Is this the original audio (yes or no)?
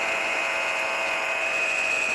no